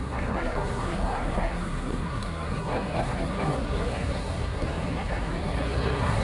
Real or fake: fake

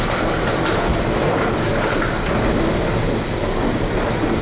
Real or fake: real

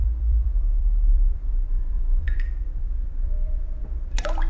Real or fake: fake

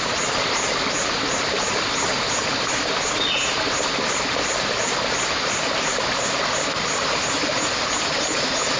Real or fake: real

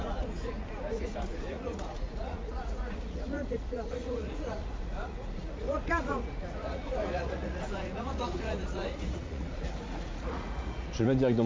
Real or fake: fake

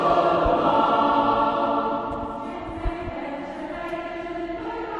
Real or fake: real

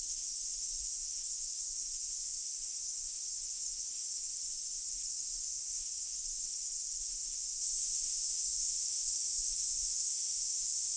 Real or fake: fake